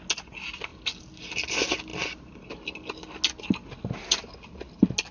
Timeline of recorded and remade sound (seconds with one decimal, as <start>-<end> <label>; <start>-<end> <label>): 0.0-5.1 recorded